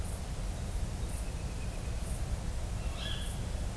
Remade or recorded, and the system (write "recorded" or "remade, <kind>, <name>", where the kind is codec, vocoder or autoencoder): recorded